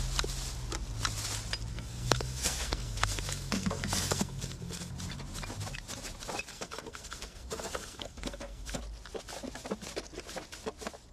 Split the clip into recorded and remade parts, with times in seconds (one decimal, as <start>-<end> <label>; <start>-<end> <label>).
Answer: 0.0-1.7 recorded; 1.7-4.9 remade; 4.9-6.5 recorded; 6.5-8.8 remade; 8.8-11.1 recorded

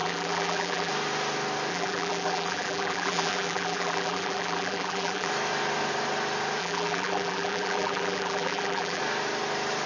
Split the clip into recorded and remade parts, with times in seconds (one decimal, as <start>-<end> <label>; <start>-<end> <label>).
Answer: 0.0-0.9 remade; 0.9-1.7 recorded; 1.7-5.3 remade; 5.3-6.6 recorded; 6.6-9.0 remade; 9.0-9.9 recorded

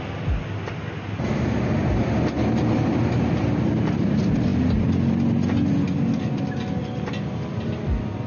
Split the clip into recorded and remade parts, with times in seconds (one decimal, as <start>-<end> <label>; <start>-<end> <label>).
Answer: 0.0-8.3 recorded

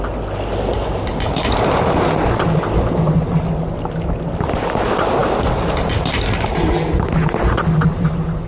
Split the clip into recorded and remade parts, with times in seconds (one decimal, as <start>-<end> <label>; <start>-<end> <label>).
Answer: 0.0-8.5 recorded

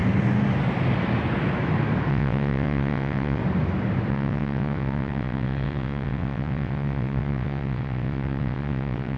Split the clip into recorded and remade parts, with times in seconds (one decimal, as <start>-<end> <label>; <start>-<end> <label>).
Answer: 0.0-2.1 recorded; 2.1-3.4 remade; 3.4-4.1 recorded; 4.1-9.2 remade